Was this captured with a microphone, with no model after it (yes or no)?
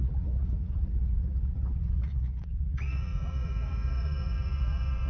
no